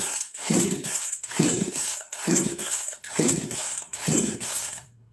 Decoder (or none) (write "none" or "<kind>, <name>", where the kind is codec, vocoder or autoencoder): codec, SNAC